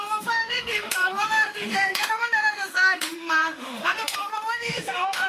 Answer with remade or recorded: remade